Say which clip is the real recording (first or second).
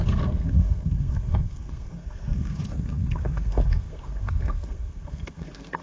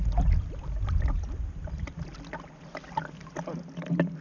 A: second